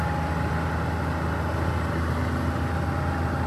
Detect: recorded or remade recorded